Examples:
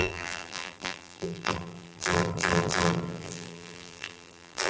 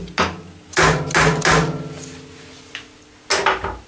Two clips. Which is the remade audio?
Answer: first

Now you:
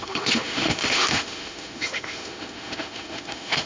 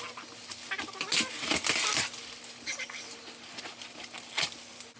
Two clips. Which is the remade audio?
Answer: first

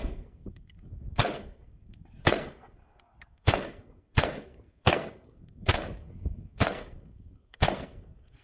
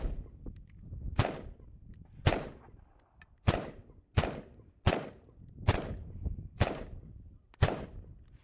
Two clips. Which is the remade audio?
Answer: first